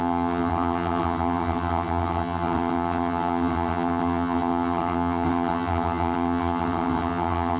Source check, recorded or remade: remade